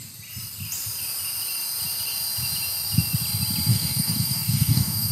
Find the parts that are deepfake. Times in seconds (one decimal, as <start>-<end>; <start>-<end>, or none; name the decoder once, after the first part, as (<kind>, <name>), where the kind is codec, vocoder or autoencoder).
3.7-5.1 (codec, DAC)